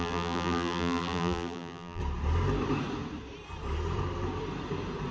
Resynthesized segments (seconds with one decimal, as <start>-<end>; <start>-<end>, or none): 0.0-2.0